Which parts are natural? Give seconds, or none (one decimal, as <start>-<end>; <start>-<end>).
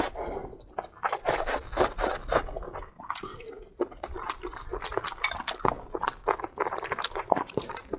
0.4-3.1; 4.7-6.4